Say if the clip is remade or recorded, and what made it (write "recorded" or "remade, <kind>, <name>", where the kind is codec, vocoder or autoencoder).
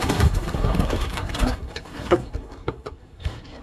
remade, codec, SNAC